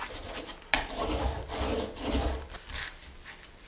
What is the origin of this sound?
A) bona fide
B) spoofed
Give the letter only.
A